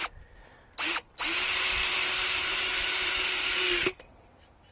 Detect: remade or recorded recorded